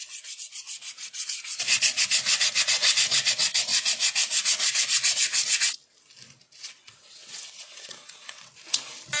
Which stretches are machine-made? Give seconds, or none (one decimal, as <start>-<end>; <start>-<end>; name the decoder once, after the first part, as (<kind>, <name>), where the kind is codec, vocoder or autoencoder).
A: 2.3-3.3 (vocoder, WaveNeXt); 6.6-8.5